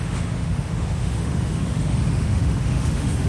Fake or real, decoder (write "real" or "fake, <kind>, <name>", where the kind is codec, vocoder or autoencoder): fake, autoencoder, DAC-VAE